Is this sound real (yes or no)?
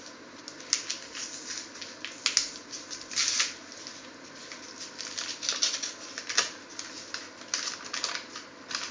yes